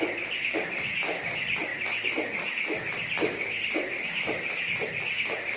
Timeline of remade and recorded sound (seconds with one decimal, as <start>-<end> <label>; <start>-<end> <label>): 0.0-1.7 remade; 1.7-4.9 recorded; 4.9-5.6 remade